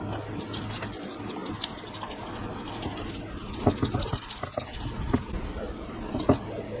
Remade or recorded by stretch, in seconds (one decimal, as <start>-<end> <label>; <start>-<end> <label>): 0.0-6.8 recorded